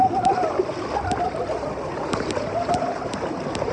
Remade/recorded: remade